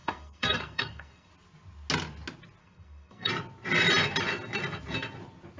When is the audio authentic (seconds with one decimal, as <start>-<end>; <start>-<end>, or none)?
1.3-2.6; 3.3-5.6